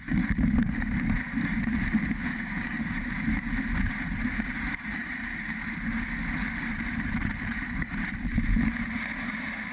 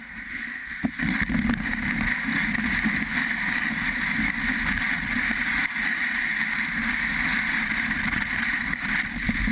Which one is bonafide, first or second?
second